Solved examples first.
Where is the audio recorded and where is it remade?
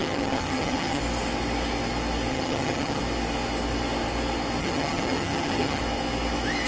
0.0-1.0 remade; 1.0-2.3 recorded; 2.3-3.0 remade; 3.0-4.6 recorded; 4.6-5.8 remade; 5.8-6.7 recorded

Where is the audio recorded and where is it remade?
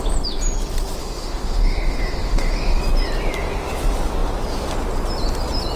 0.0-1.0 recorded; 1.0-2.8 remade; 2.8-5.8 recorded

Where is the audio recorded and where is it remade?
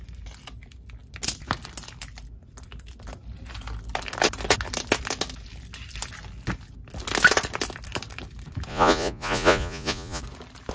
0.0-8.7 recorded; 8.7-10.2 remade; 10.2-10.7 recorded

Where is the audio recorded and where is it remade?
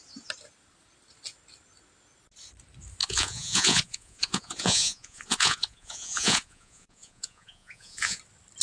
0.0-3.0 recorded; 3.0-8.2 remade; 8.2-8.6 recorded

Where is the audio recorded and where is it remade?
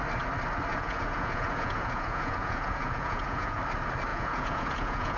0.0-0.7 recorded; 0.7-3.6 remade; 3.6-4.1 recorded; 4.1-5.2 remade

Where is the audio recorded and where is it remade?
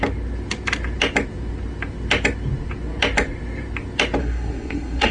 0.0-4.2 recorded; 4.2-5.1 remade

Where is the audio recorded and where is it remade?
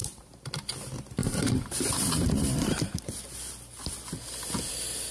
0.0-0.5 remade; 0.5-1.2 recorded; 1.2-3.2 remade; 3.2-5.1 recorded